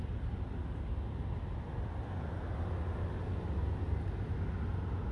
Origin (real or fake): real